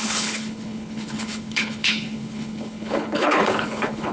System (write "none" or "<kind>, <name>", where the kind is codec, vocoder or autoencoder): codec, HILCodec